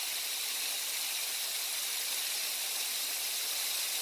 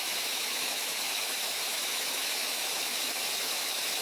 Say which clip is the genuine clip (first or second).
first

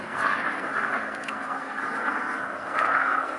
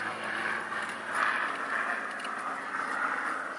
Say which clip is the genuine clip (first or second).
second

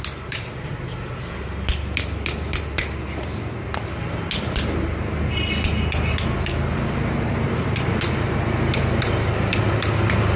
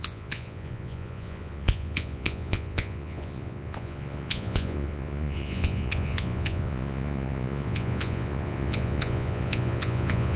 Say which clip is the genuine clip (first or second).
first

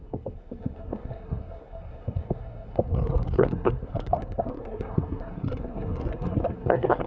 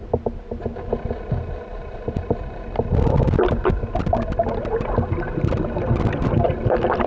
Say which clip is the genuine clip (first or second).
second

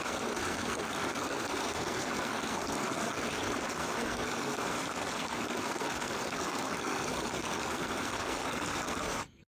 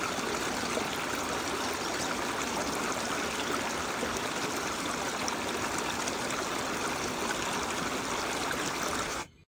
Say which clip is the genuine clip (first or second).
second